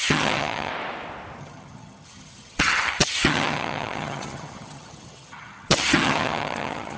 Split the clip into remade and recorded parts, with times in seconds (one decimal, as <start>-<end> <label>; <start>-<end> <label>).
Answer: 0.0-0.7 remade; 0.7-1.4 recorded; 1.4-7.0 remade